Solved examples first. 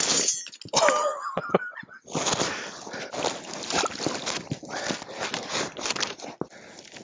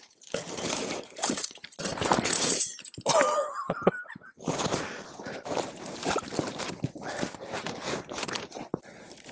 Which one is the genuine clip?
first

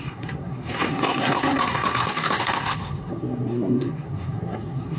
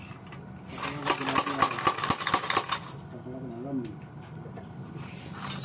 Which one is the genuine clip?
second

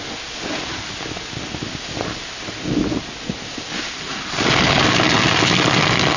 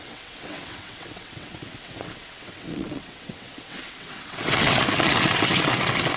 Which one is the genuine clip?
first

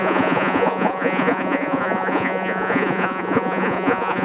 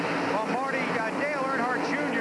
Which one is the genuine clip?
second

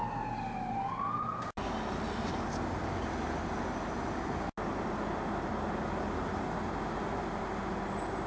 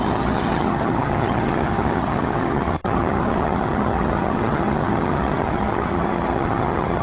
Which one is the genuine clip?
first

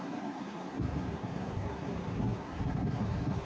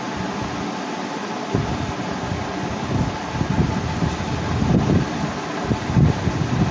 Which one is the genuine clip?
second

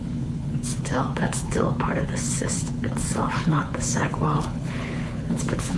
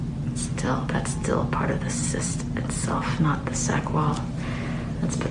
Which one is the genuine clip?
second